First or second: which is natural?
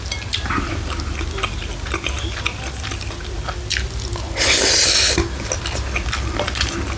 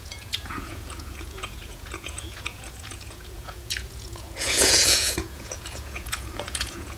first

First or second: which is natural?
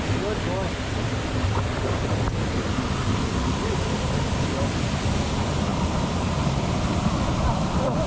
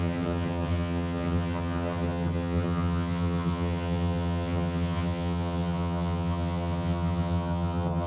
first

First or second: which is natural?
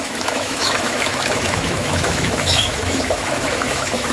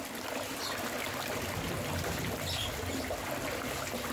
second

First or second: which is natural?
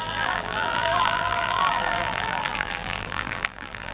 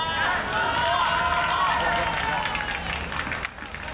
second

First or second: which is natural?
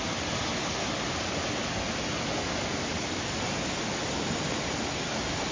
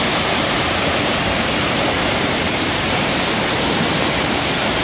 first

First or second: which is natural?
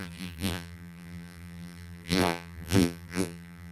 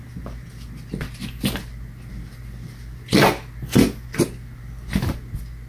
second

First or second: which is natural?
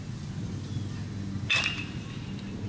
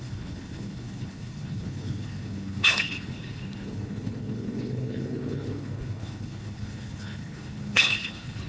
first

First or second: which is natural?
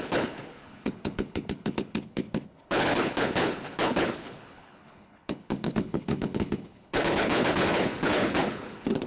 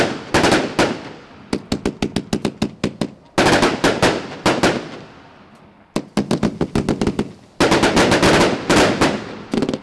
second